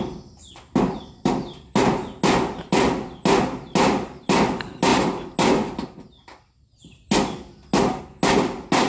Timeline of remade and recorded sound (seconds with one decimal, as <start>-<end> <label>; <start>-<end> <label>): 0.0-8.9 recorded